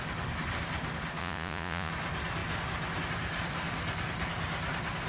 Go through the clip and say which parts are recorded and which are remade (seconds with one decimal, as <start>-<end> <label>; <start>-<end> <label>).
0.0-1.2 recorded; 1.2-1.9 remade; 1.9-5.1 recorded